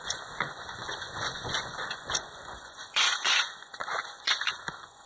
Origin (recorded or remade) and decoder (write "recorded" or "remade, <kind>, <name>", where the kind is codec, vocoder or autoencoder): remade, vocoder, Vocos